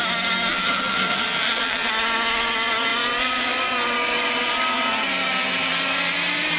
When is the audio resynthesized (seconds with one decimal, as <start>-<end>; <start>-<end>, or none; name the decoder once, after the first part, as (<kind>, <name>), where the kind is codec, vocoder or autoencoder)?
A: 0.5-1.9 (vocoder, WaveNeXt)